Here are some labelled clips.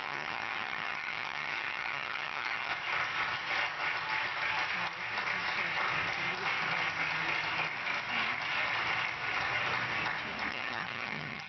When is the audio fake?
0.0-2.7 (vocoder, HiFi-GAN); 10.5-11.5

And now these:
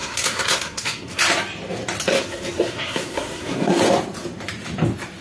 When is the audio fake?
0.0-1.2 (codec, SNAC); 2.1-3.8